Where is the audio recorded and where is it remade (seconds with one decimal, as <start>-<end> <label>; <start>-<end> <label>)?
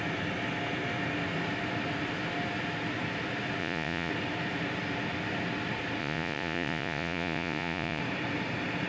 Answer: 0.0-3.6 recorded; 3.6-4.1 remade; 4.1-6.0 recorded; 6.0-8.0 remade; 8.0-8.9 recorded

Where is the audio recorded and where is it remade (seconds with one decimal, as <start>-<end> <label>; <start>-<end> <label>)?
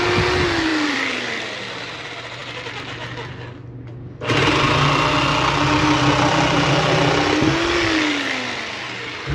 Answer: 0.0-0.7 recorded; 0.7-1.6 remade; 1.6-9.3 recorded